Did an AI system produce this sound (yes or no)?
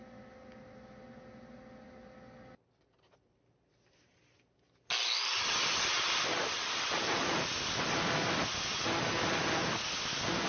no